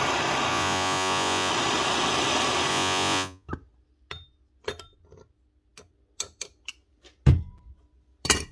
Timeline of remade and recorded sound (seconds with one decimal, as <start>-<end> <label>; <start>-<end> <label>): 0.0-0.5 recorded; 0.5-1.5 remade; 1.5-2.7 recorded; 2.7-3.5 remade; 3.5-8.5 recorded